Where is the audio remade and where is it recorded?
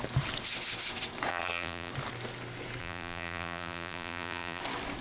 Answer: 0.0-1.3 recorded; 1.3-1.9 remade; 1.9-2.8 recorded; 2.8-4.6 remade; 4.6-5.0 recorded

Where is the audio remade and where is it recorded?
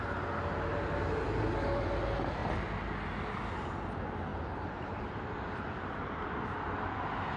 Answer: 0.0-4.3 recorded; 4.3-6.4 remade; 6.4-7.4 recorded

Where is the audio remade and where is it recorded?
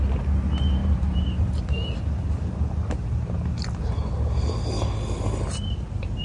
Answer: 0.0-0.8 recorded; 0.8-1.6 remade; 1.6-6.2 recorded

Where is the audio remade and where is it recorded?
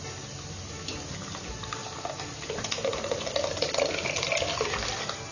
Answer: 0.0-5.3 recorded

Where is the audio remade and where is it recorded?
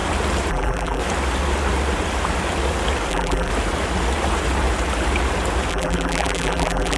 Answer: 0.0-0.5 recorded; 0.5-1.0 remade; 1.0-3.1 recorded; 3.1-3.5 remade; 3.5-5.7 recorded; 5.7-7.0 remade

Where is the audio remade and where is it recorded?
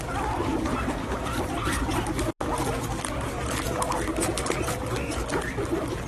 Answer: 0.0-5.3 recorded; 5.3-6.1 remade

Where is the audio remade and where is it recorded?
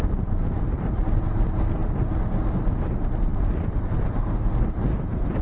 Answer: 0.0-1.8 remade; 1.8-2.8 recorded; 2.8-5.4 remade